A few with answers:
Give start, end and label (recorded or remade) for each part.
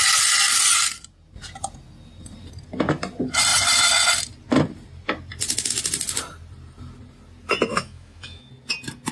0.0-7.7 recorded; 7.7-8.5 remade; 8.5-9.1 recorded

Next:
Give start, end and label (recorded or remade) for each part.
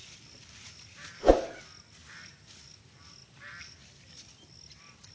0.0-5.1 recorded